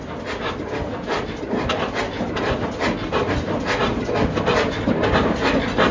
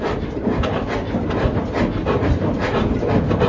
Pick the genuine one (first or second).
first